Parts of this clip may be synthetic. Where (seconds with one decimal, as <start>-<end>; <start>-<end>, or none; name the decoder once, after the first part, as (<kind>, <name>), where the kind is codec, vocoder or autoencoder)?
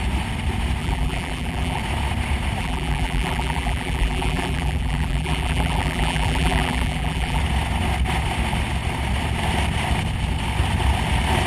0.8-1.8 (vocoder, BigVGAN v2); 2.6-7.4